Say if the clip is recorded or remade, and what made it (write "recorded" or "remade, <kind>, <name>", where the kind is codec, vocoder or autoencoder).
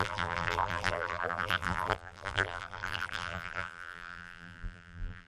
remade, vocoder, BigVGAN v2